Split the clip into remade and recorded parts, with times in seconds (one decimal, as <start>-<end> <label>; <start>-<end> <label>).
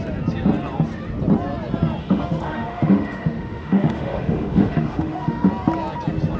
0.0-2.0 recorded; 2.0-5.5 remade; 5.5-6.4 recorded